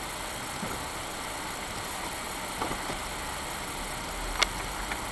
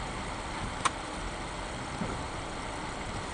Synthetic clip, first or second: second